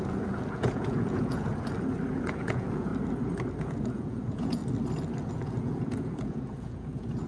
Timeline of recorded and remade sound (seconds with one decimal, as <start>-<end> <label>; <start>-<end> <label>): 0.0-1.5 remade; 1.5-2.1 recorded; 2.1-2.9 remade; 2.9-3.6 recorded; 3.6-4.6 remade; 4.6-5.3 recorded; 5.3-7.3 remade